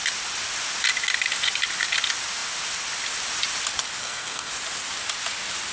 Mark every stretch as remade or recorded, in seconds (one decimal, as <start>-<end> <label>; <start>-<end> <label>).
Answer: 0.0-4.0 recorded; 4.0-4.5 remade; 4.5-5.7 recorded